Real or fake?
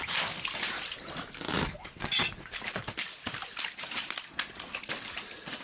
real